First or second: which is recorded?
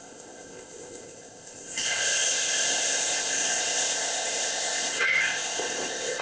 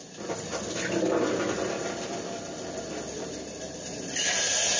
second